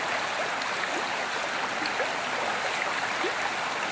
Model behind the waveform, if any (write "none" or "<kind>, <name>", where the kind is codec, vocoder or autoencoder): none